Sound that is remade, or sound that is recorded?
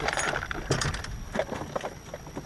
remade